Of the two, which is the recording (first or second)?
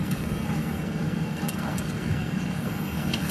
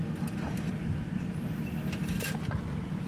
second